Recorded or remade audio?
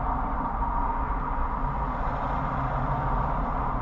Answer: recorded